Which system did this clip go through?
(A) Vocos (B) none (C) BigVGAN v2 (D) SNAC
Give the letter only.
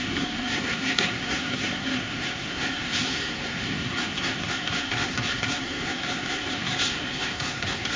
D